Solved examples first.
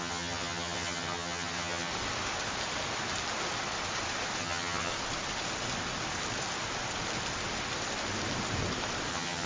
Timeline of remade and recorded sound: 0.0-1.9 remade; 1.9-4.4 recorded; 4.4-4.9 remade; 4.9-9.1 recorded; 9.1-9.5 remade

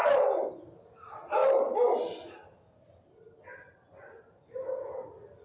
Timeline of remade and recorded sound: 0.0-5.4 recorded

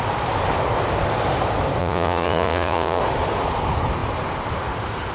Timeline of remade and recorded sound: 0.0-1.8 recorded; 1.8-3.0 remade; 3.0-5.1 recorded